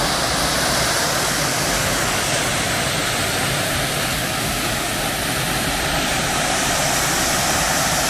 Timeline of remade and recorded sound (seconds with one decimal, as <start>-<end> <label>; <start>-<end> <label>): 0.0-1.0 recorded; 1.0-2.4 remade; 2.4-4.1 recorded; 4.1-4.9 remade; 4.9-8.1 recorded